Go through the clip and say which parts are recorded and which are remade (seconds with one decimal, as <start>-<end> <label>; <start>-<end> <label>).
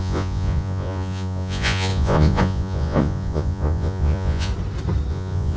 0.0-4.5 remade; 4.5-5.1 recorded; 5.1-5.6 remade